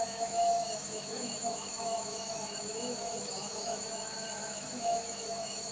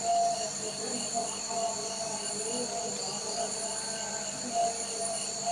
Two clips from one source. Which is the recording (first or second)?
second